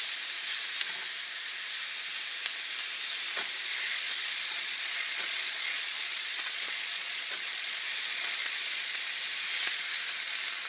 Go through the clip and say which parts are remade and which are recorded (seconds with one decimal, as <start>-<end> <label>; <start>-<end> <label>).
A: 0.0-3.9 recorded; 3.9-9.0 remade; 9.0-10.7 recorded